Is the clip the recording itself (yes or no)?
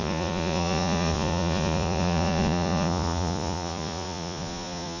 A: no